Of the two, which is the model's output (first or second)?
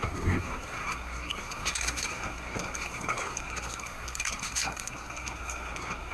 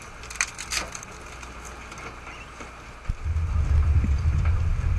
first